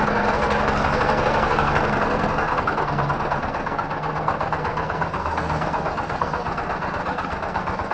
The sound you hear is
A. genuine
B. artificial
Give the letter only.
B